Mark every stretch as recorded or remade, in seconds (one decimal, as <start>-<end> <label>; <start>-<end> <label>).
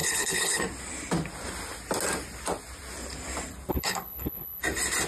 0.0-0.6 remade; 0.6-3.7 recorded; 3.7-4.6 remade; 4.6-5.1 recorded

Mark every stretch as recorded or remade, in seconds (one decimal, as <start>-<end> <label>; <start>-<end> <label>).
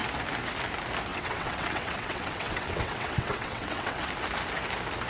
0.0-1.1 recorded; 1.1-4.1 remade; 4.1-5.1 recorded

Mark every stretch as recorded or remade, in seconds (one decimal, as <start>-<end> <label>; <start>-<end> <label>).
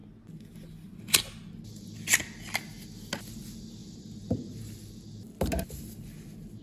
0.0-3.8 recorded; 3.8-4.6 remade; 4.6-6.6 recorded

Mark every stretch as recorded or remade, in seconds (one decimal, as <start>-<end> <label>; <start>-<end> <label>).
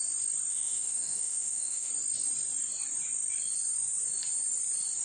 0.0-0.5 recorded; 0.5-1.9 remade; 1.9-5.0 recorded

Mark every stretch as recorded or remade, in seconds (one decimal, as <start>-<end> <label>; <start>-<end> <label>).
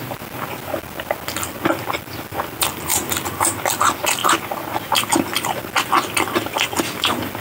0.0-7.4 recorded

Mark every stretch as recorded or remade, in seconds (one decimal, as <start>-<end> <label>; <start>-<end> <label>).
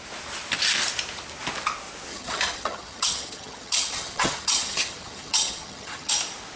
0.0-2.1 recorded; 2.1-6.1 remade; 6.1-6.6 recorded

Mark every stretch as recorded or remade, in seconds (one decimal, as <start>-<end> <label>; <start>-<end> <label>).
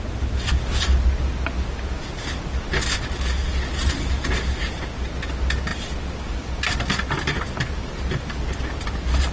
0.0-9.3 recorded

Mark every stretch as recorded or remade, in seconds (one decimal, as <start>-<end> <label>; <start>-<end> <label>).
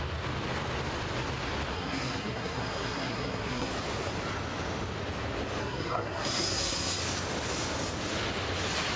0.0-1.7 recorded; 1.7-3.7 remade; 3.7-5.6 recorded; 5.6-7.0 remade; 7.0-9.0 recorded